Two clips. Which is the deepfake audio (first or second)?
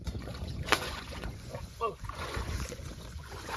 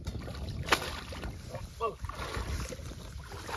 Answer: first